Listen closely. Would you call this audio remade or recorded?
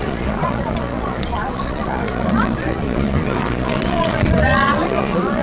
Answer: remade